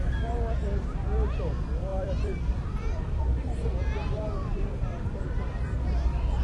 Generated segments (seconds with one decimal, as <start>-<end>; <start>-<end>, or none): 1.9-3.2; 4.4-5.2